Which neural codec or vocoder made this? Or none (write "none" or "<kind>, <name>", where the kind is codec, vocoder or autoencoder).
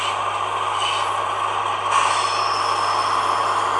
none